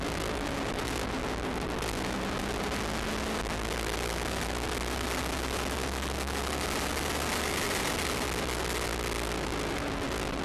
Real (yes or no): yes